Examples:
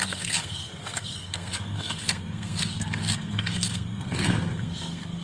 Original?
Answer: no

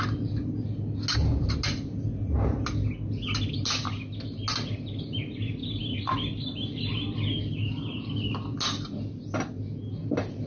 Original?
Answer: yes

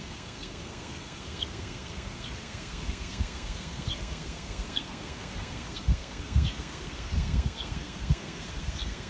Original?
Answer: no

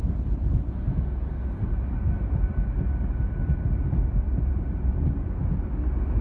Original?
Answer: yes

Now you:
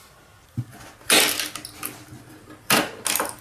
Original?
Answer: yes